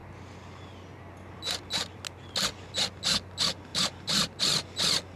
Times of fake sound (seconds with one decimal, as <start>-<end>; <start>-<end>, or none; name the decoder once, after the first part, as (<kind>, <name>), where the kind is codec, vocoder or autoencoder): 3.7-4.4 (vocoder, BigVGAN v2)